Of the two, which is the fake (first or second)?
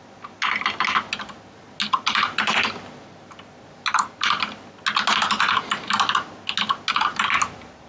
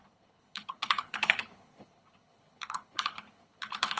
second